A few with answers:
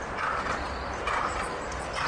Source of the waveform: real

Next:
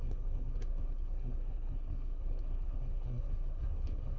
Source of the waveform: fake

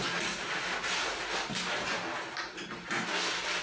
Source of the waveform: real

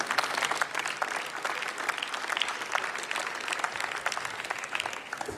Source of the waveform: real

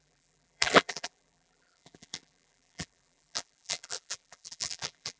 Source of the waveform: fake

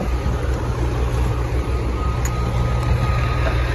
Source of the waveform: real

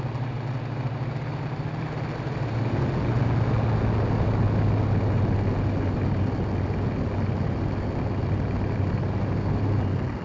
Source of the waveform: real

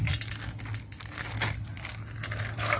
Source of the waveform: real